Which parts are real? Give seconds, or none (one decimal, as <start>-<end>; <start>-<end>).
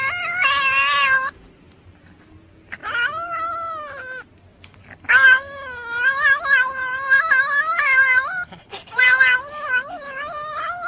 0.0-10.9